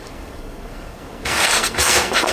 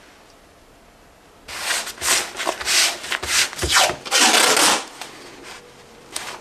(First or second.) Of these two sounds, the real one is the second